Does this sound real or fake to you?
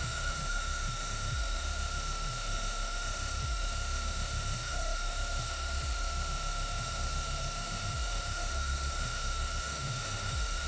fake